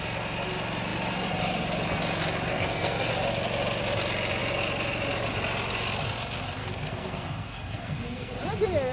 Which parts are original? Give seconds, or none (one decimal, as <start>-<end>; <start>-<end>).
0.0-2.5; 3.1-6.6; 8.3-8.9